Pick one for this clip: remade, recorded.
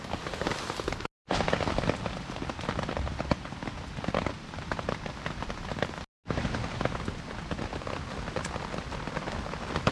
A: recorded